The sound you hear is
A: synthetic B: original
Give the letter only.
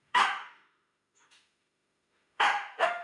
A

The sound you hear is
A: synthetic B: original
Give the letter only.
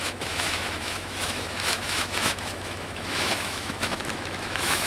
A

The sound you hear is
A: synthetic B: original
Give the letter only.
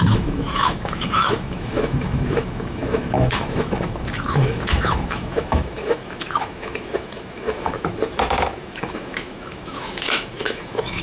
A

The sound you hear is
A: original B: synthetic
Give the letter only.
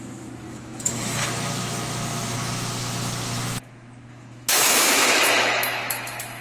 B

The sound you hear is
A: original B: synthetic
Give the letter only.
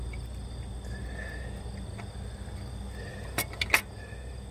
A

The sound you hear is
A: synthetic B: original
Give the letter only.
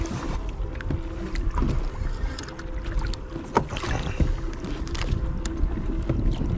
B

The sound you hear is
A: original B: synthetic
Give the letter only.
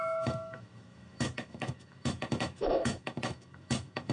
B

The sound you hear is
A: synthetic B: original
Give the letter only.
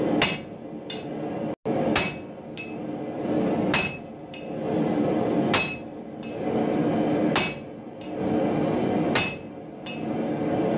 B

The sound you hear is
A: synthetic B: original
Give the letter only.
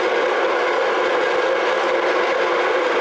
B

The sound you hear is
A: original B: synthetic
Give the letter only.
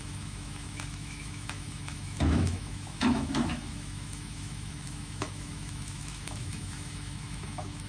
B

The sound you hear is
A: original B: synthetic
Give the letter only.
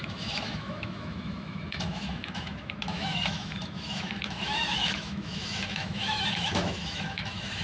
B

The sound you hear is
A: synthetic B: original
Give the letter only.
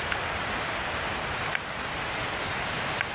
B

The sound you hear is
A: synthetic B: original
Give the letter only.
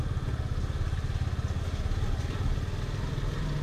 B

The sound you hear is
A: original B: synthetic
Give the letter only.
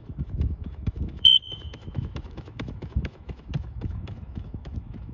B